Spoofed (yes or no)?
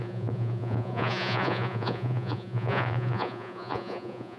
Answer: yes